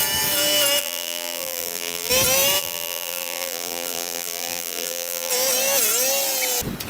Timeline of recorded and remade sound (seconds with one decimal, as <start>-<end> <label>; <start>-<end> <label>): 0.0-0.8 recorded; 0.8-2.1 remade; 2.1-2.6 recorded; 2.6-5.3 remade; 5.3-6.9 recorded

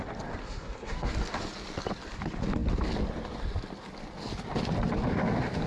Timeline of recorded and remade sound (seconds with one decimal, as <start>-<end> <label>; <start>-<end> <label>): 0.0-0.4 recorded; 0.4-1.1 remade; 1.1-5.7 recorded

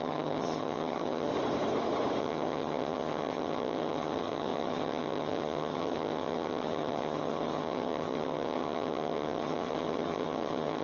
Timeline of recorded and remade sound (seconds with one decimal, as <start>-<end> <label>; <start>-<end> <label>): 0.0-1.3 remade; 1.3-2.2 recorded; 2.2-10.8 remade

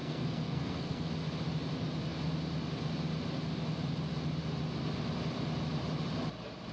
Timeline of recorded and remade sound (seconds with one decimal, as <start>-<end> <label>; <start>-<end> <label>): 0.0-1.1 remade; 1.1-6.7 recorded

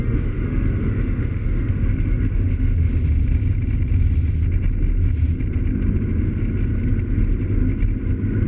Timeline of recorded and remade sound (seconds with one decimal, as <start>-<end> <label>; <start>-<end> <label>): 0.0-2.9 remade; 2.9-8.5 recorded

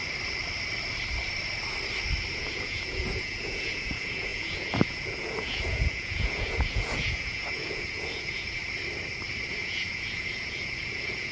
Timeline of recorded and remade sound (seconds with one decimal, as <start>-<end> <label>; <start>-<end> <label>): 0.0-2.3 recorded; 2.3-8.6 remade; 8.6-9.5 recorded; 9.5-11.3 remade